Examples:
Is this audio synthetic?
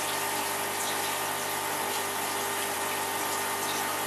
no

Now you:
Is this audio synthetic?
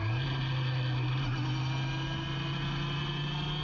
no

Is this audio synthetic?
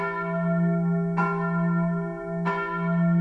no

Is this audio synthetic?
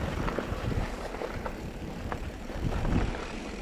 yes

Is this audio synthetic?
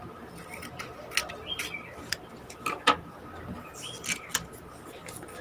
no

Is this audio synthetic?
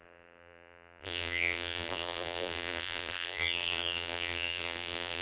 yes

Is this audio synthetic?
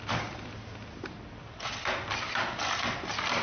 no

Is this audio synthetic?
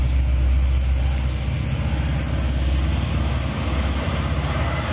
no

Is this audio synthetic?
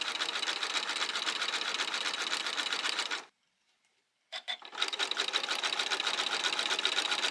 yes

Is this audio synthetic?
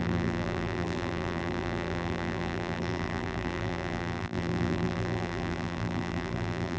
yes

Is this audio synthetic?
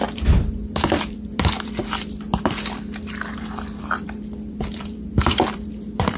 yes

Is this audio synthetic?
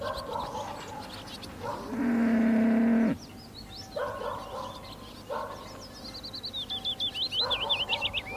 no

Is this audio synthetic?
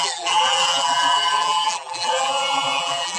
yes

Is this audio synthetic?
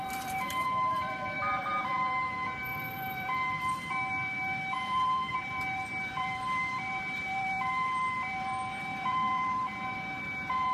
yes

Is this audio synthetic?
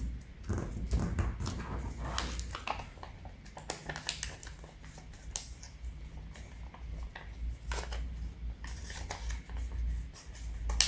no